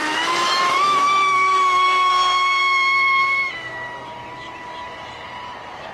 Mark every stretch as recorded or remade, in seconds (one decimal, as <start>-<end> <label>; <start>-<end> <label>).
0.0-2.1 remade; 2.1-2.6 recorded; 2.6-3.5 remade; 3.5-5.9 recorded